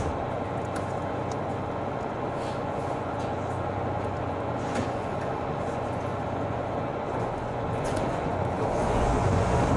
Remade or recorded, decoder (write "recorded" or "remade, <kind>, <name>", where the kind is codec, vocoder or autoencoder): remade, vocoder, Vocos